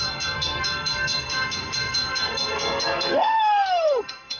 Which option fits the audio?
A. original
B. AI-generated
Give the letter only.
B